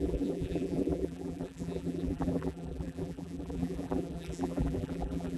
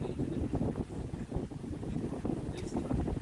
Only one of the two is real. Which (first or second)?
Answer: second